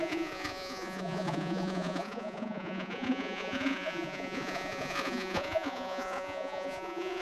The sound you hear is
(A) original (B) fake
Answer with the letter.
B